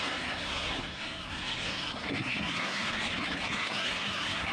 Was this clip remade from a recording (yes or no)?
yes